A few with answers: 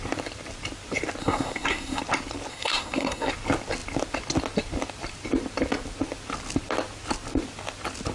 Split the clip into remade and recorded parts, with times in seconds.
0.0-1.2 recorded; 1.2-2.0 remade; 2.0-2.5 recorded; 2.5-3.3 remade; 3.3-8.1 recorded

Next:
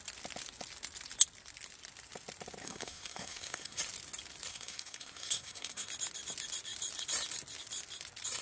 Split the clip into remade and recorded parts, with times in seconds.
0.0-2.6 recorded; 2.6-3.8 remade; 3.8-4.5 recorded; 4.5-5.9 remade; 5.9-8.4 recorded

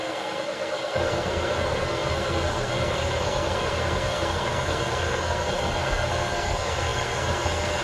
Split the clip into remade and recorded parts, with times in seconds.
0.0-7.8 remade

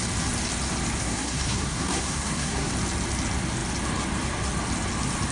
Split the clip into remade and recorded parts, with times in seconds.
0.0-1.0 recorded; 1.0-2.7 remade; 2.7-5.3 recorded

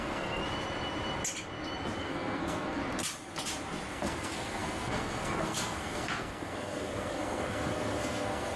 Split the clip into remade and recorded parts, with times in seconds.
0.0-0.4 remade; 0.4-2.0 recorded; 2.0-2.8 remade; 2.8-3.9 recorded; 3.9-8.6 remade

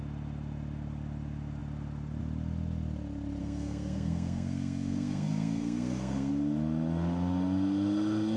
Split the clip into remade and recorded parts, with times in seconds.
0.0-3.4 recorded; 3.4-6.3 remade; 6.3-8.4 recorded